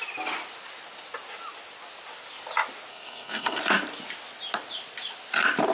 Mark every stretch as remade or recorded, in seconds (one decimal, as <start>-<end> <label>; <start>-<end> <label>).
0.0-2.9 recorded; 2.9-3.6 remade; 3.6-5.7 recorded

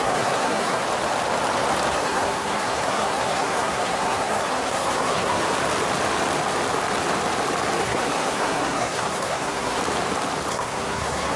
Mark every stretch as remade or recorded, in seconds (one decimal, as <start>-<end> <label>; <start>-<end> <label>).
0.0-0.8 remade; 0.8-1.9 recorded; 1.9-5.4 remade; 5.4-7.8 recorded; 7.8-9.8 remade; 9.8-10.5 recorded; 10.5-11.4 remade

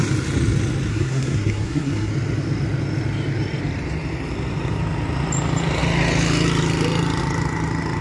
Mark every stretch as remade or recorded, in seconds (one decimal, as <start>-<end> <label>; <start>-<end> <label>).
0.0-0.9 recorded; 0.9-2.1 remade; 2.1-8.0 recorded

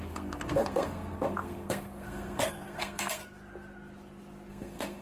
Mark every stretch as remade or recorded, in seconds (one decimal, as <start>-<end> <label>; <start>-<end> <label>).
0.0-3.2 remade; 3.2-4.5 recorded; 4.5-5.0 remade

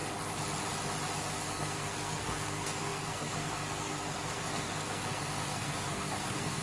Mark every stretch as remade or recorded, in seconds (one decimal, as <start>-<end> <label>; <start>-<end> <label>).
0.0-1.5 recorded; 1.5-6.6 remade

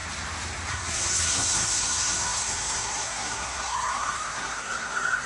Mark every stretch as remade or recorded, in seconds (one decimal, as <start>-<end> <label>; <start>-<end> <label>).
0.0-0.7 recorded; 0.7-5.3 remade